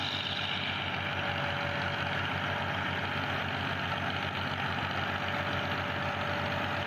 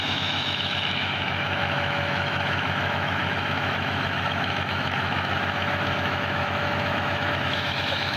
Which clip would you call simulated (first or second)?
second